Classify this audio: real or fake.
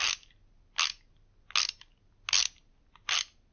real